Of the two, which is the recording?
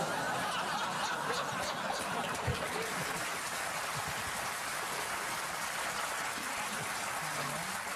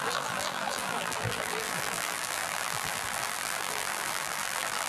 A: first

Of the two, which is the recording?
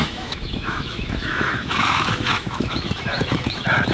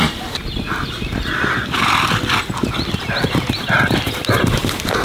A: second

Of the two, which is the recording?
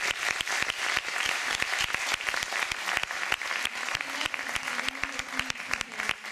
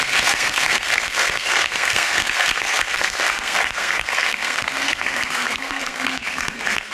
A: first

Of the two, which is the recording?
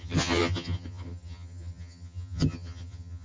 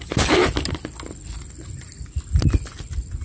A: second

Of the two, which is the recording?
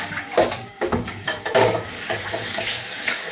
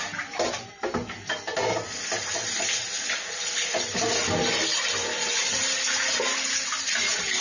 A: second